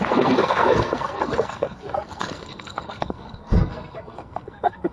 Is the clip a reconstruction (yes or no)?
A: yes